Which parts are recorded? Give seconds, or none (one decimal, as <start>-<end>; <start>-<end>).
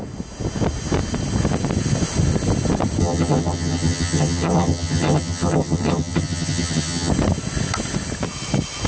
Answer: 0.0-3.0; 7.1-8.9